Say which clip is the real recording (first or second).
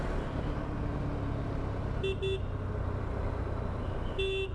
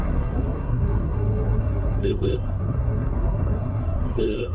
first